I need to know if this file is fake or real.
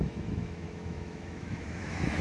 fake